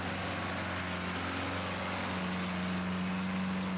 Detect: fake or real real